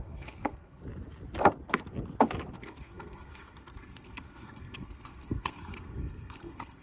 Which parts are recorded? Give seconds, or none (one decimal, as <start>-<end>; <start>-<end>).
0.8-2.5